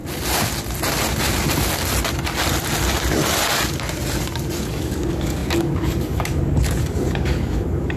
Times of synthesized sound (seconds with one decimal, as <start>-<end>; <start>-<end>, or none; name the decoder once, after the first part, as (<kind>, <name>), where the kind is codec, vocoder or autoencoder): 4.8-8.0 (codec, DAC)